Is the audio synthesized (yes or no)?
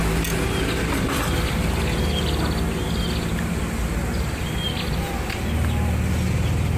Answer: no